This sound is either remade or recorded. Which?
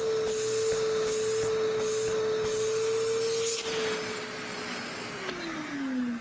recorded